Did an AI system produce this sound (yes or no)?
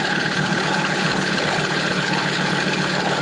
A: yes